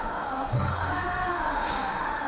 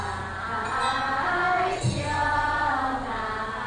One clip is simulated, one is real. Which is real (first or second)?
second